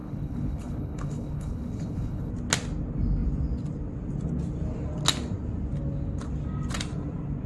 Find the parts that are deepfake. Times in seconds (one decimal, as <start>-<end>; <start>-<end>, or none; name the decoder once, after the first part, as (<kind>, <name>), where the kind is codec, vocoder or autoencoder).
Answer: 0.0-2.3 (codec, HILCodec)